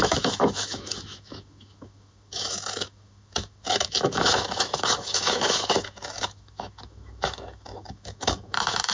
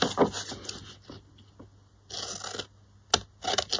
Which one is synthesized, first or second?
first